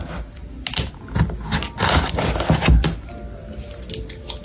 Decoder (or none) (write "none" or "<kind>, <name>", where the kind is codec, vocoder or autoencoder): none